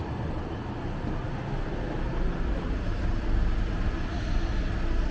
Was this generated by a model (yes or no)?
no